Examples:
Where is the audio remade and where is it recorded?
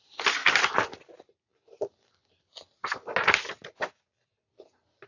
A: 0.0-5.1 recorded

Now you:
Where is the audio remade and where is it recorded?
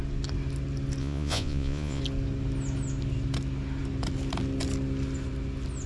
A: 0.0-1.0 recorded; 1.0-2.0 remade; 2.0-5.9 recorded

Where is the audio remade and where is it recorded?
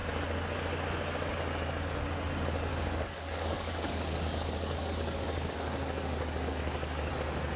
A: 0.0-2.7 recorded; 2.7-7.1 remade; 7.1-7.6 recorded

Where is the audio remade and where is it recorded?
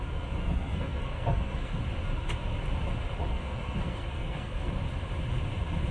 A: 0.0-0.4 recorded; 0.4-1.8 remade; 1.8-3.3 recorded; 3.3-4.7 remade; 4.7-5.9 recorded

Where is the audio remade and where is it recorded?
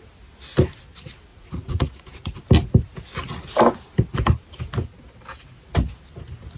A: 0.0-1.3 recorded; 1.3-2.4 remade; 2.4-6.6 recorded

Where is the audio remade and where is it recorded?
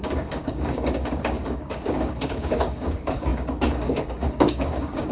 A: 0.0-5.1 remade